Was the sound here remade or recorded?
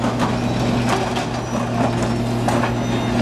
recorded